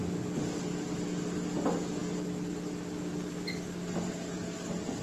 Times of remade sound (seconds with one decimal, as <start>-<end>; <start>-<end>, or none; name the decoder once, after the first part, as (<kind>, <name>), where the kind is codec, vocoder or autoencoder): none